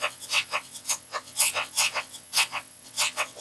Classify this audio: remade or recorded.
remade